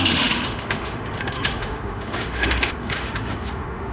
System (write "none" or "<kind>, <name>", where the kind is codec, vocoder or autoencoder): autoencoder, DAC-VAE